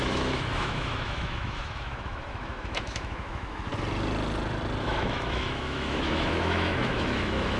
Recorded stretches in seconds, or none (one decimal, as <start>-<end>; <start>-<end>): 3.7-4.8

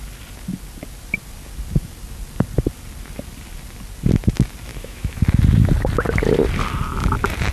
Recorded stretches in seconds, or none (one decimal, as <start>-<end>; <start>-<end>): 0.0-4.7; 5.2-7.5

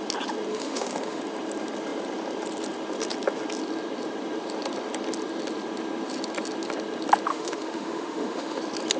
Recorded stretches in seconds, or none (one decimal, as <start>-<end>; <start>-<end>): 0.0-0.5; 1.2-7.3; 8.6-9.0

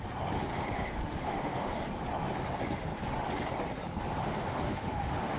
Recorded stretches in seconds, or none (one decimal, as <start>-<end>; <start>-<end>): 0.0-0.5; 1.9-4.2